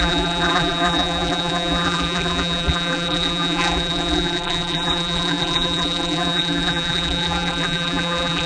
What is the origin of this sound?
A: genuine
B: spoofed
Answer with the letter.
B